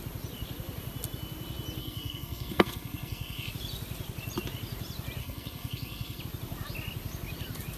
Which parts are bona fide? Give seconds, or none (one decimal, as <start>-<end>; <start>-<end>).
0.0-1.8; 3.5-5.2; 6.2-7.8